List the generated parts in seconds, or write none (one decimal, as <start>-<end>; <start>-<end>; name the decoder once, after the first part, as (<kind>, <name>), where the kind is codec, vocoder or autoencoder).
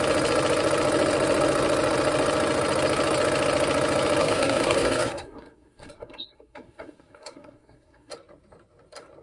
4.2-8.1 (codec, SNAC)